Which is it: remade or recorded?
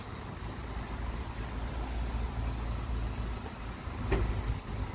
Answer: recorded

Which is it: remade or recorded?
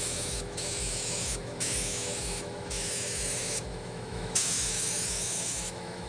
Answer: remade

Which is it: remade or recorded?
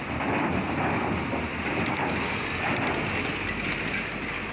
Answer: recorded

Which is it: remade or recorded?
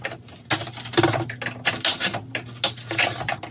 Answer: recorded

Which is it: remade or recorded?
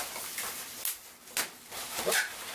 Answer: recorded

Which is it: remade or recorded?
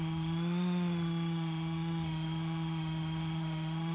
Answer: remade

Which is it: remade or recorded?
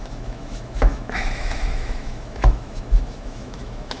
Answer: remade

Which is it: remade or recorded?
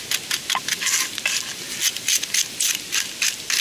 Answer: recorded